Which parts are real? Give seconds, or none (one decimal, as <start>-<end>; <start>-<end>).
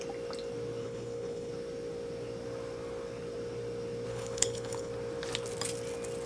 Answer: 0.0-0.8; 1.5-4.1; 4.9-6.3